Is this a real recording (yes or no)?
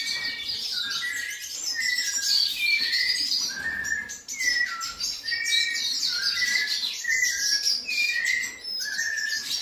no